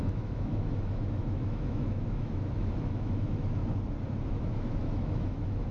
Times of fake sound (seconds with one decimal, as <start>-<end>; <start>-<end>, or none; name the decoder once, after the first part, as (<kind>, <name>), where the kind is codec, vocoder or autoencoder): 0.0-3.6 (autoencoder, DAC-VAE); 4.3-5.7